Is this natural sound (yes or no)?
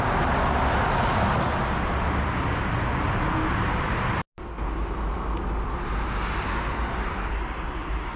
yes